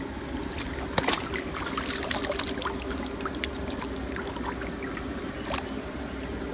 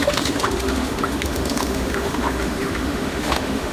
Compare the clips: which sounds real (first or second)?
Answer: first